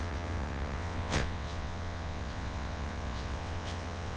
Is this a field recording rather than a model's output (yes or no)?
no